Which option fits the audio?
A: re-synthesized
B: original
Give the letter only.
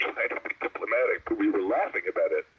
B